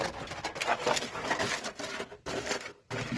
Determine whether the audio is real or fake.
real